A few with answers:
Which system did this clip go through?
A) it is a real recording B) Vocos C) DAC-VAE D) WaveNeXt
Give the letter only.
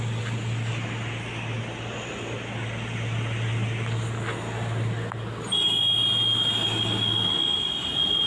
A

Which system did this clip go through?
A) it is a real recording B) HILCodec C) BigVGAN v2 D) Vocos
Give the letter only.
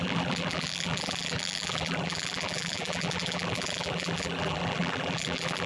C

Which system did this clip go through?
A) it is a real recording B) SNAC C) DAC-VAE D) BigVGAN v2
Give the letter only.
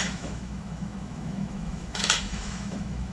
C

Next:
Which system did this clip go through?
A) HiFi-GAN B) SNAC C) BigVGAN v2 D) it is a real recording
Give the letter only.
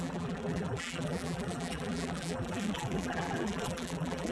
C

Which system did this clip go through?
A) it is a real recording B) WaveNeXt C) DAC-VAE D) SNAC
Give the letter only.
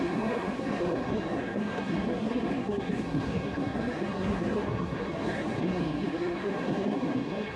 D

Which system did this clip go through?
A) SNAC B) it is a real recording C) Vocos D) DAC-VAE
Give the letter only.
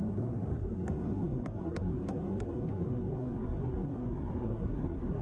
A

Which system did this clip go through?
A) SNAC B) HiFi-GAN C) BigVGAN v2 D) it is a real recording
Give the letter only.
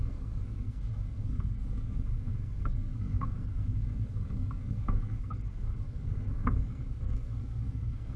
A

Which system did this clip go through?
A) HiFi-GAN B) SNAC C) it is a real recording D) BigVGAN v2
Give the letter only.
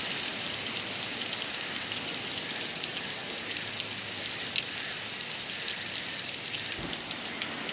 C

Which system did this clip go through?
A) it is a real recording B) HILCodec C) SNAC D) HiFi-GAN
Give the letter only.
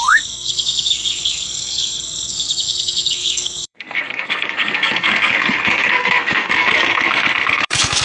C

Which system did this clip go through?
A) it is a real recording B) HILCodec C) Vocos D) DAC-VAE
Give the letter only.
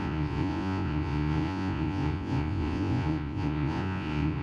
C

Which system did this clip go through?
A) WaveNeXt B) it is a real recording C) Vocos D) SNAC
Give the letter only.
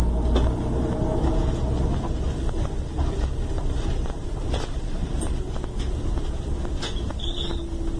B